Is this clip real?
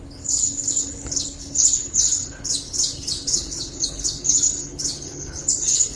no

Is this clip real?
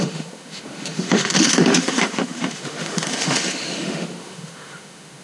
no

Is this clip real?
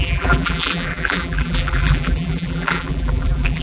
no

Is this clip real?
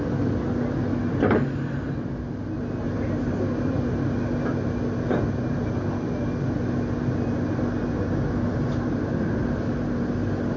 yes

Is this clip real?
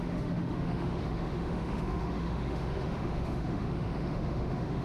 no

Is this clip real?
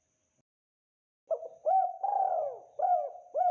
yes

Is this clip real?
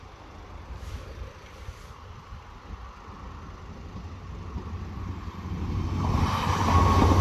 yes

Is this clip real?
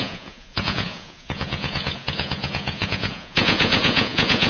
no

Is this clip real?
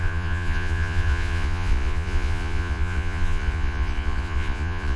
no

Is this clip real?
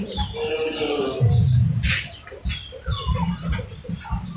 yes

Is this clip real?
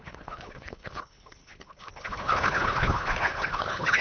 no